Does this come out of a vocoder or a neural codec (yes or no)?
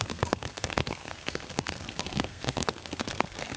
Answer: yes